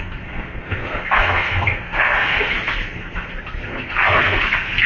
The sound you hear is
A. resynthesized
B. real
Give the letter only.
A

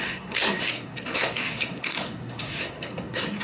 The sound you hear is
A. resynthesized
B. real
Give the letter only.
A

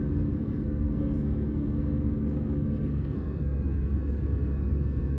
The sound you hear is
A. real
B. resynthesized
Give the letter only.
B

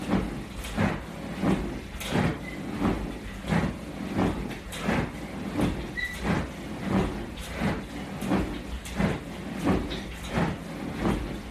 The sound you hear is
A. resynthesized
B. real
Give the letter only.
B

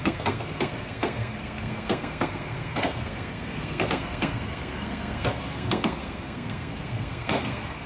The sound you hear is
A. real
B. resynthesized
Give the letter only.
B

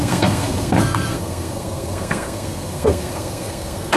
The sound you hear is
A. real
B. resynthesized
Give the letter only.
B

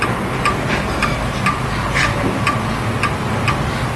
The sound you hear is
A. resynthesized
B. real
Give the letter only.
B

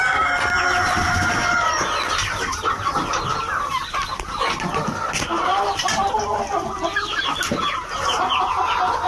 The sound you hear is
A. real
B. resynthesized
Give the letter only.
A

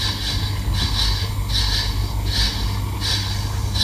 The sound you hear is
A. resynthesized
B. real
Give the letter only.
B